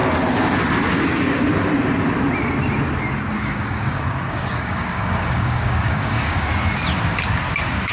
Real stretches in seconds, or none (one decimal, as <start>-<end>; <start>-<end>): 0.0-3.3; 6.5-7.9